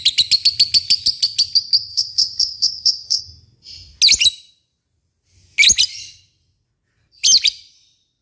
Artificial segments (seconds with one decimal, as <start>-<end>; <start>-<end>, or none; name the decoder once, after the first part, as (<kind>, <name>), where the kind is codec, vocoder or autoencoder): 1.9-3.2 (codec, SNAC)